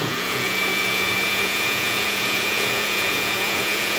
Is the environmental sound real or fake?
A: fake